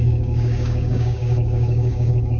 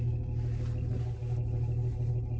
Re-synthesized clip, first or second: first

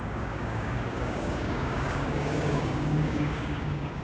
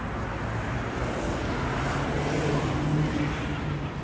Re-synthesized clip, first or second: first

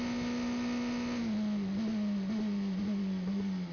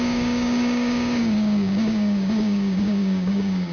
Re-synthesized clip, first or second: second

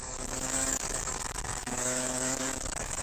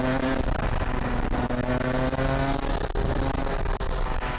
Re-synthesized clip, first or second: first